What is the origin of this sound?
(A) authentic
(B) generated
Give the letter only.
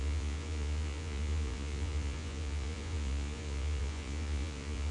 B